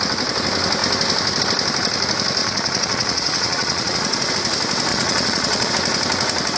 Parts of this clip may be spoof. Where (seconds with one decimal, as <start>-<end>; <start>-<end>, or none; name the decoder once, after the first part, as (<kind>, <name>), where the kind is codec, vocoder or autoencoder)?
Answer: 2.4-4.3 (vocoder, Vocos); 4.9-5.7